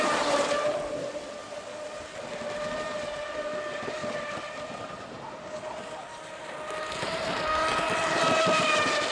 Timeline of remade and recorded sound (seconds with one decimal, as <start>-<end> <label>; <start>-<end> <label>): 0.0-9.1 recorded